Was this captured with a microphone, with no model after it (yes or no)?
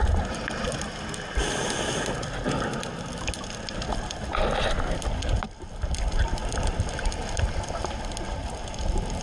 yes